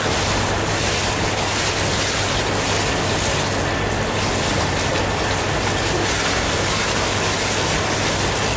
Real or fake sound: real